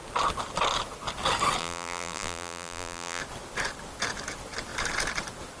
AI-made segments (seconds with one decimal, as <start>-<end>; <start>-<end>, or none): 1.6-3.2